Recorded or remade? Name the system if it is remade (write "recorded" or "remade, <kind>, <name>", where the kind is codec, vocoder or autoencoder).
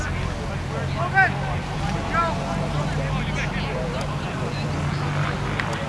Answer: recorded